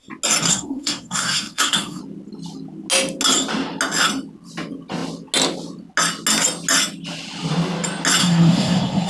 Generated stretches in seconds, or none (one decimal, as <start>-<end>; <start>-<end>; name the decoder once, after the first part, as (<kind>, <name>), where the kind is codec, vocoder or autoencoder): 0.5-2.0 (codec, SNAC); 8.2-9.1

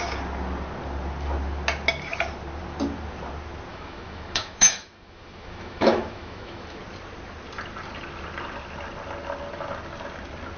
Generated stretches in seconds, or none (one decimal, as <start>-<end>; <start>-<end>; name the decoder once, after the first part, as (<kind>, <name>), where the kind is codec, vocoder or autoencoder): 3.7-6.8 (autoencoder, DAC-VAE)

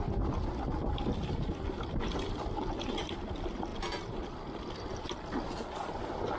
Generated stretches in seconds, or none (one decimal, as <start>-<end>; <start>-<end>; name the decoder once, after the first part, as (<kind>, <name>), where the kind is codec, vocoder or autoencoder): none

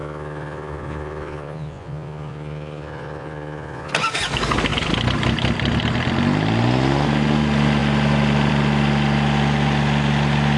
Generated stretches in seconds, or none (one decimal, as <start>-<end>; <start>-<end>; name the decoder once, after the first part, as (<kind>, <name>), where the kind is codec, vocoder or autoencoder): 0.0-3.9 (vocoder, Vocos)

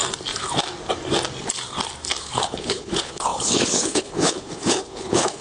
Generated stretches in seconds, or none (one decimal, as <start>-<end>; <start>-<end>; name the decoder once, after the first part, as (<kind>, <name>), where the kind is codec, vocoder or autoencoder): 2.2-5.4 (codec, HILCodec)